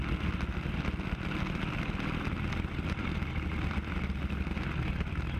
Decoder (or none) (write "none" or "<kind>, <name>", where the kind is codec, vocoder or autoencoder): none